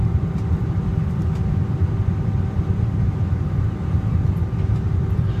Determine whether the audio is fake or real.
real